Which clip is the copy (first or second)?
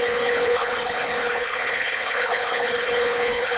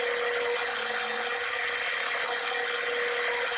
first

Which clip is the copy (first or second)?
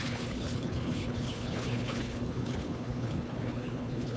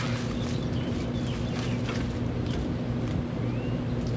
first